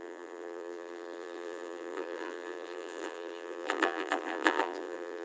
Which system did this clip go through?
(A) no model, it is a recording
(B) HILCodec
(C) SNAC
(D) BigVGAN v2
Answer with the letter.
D